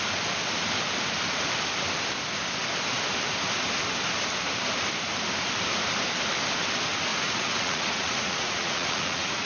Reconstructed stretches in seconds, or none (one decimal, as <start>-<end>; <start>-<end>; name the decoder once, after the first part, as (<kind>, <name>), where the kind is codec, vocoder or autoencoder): 7.1-9.5 (vocoder, Vocos)